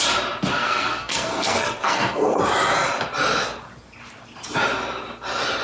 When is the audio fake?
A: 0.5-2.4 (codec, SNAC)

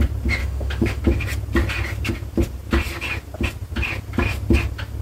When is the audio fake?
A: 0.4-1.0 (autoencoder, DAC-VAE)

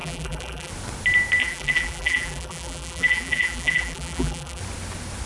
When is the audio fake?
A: 0.0-0.7 (vocoder, BigVGAN v2); 1.4-4.6

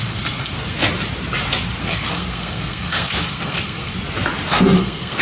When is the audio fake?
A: 0.0-0.8 (codec, SNAC); 1.8-3.9; 4.5-5.2